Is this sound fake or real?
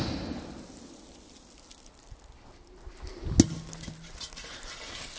real